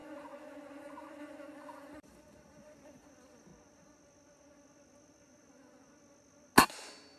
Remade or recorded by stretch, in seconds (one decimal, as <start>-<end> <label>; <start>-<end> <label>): 0.0-1.6 recorded; 1.6-3.5 remade; 3.5-7.2 recorded